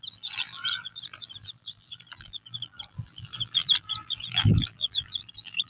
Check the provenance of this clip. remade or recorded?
remade